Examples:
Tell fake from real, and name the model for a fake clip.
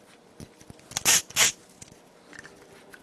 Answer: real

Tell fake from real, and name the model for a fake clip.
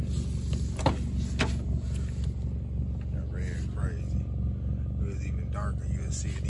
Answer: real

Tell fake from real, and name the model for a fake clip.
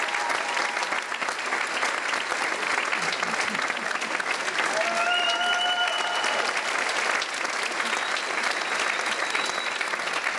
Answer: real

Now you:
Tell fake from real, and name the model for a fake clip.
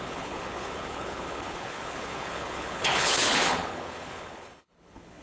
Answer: fake, codec, HILCodec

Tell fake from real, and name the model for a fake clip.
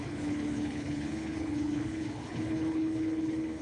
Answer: fake, codec, HILCodec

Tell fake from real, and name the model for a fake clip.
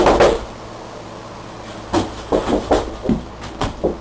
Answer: real